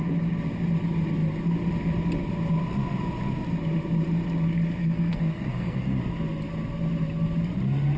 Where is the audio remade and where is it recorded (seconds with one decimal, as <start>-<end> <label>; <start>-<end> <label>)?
0.0-4.8 recorded; 4.8-6.0 remade; 6.0-8.0 recorded